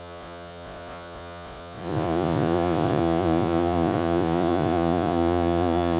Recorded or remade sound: remade